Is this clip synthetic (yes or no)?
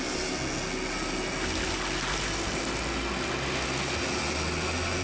no